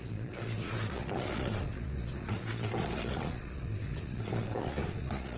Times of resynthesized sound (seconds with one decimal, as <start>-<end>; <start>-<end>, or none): 0.0-5.4